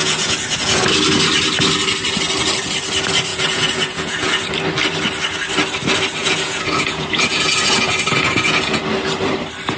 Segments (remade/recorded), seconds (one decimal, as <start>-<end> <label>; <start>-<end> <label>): 0.0-0.8 remade; 0.8-3.3 recorded; 3.3-4.4 remade; 4.4-6.2 recorded; 6.2-8.8 remade; 8.8-9.8 recorded